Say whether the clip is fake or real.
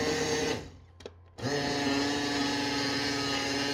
real